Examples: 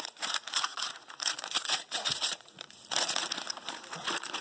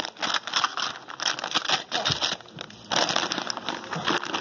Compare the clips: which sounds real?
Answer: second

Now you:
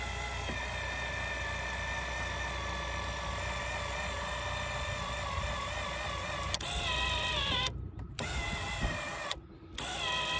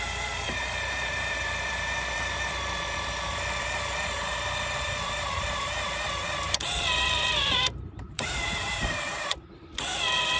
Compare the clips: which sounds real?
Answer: first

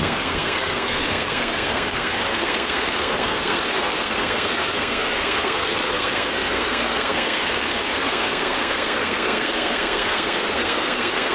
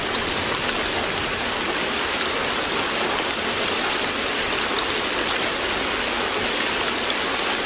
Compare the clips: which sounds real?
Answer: second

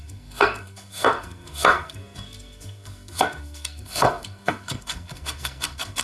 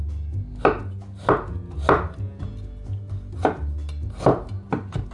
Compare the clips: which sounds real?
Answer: second